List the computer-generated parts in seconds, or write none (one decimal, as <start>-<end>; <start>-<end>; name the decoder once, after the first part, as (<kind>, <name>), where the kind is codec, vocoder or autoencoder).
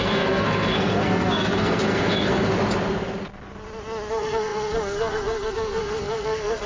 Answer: 0.0-2.5 (codec, SNAC); 4.1-6.7